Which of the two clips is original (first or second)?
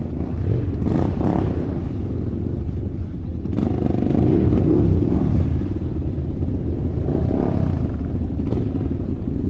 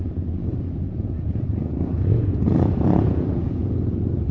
first